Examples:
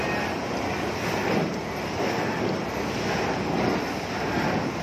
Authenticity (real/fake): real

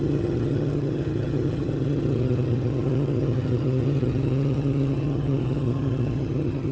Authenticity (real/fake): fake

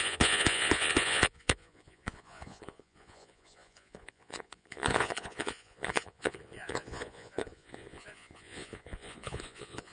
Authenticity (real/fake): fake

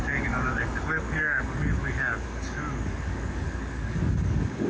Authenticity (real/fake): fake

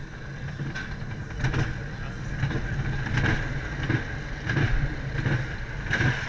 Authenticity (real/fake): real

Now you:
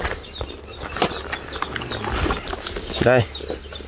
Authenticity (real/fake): real